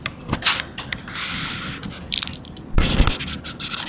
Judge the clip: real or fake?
real